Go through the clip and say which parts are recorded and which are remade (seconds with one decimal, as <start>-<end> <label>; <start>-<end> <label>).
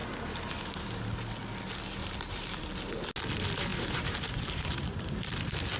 0.0-2.0 recorded; 2.0-2.6 remade; 2.6-3.7 recorded; 3.7-5.0 remade; 5.0-5.8 recorded